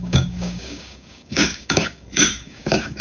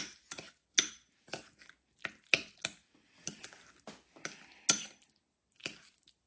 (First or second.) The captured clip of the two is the second